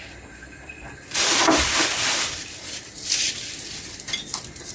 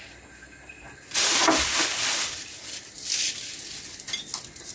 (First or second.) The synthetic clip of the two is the first